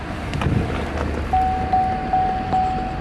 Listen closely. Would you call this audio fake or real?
real